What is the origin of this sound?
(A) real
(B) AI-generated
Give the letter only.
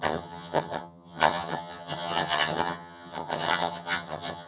B